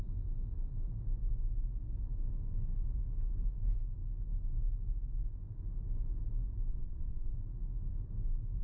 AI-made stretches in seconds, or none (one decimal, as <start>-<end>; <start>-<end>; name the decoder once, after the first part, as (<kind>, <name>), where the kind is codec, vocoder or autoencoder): 6.7-7.3 (vocoder, WaveNeXt)